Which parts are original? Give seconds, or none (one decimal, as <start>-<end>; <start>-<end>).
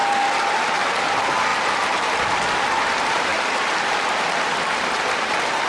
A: 0.0-1.0; 1.5-2.8; 3.3-5.7